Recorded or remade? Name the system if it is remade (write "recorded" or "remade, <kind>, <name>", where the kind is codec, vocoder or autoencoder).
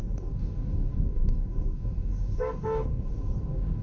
remade, codec, DAC